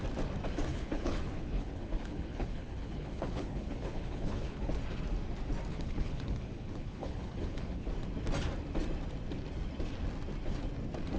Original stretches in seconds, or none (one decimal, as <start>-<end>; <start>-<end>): 0.0-0.7; 4.7-5.7; 7.9-11.2